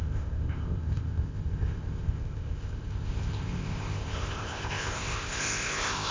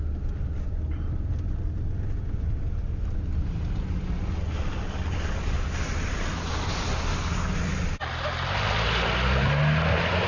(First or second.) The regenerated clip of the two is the first